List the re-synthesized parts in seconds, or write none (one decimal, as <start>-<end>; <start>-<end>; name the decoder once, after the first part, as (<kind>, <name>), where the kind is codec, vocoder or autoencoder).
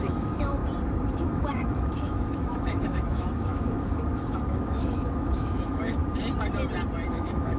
0.0-0.6 (autoencoder, DAC-VAE); 1.1-6.0; 7.1-7.6